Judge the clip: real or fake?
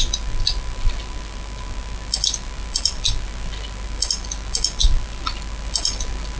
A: real